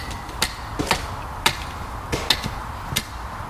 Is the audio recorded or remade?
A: recorded